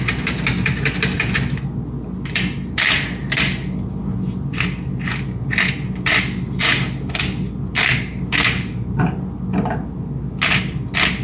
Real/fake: real